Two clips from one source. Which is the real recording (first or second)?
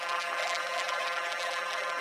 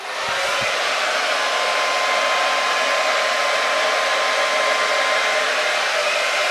second